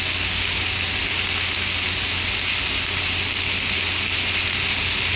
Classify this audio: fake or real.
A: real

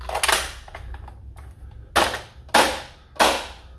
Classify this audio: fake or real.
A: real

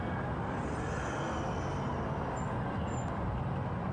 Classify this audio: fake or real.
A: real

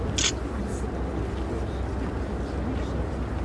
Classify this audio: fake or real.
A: real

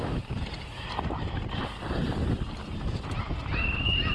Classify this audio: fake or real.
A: real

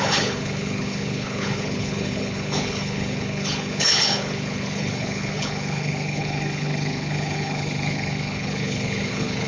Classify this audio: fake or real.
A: fake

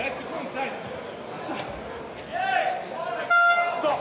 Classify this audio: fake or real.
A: real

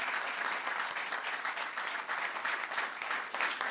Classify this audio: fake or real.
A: real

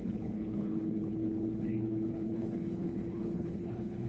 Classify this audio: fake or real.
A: fake